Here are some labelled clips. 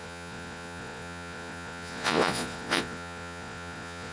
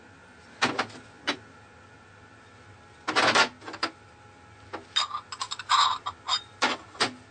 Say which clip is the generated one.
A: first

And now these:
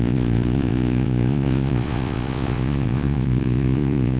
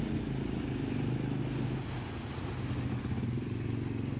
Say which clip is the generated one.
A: first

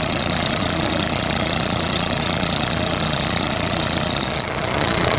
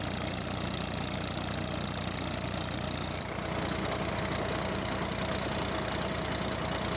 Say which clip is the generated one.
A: first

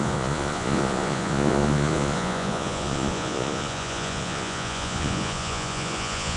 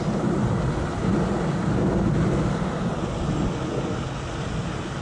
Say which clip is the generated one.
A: first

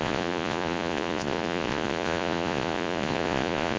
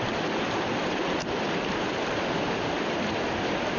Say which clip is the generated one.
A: first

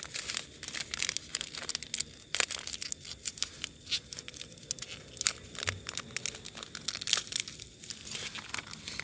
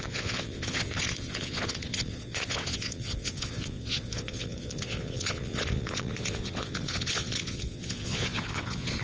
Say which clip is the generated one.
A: second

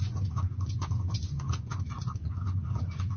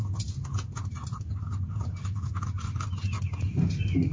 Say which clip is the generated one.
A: first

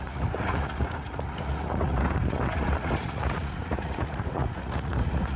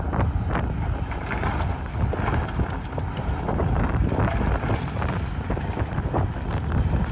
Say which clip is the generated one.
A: first